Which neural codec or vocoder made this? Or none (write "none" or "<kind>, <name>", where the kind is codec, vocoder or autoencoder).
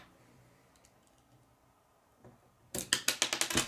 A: none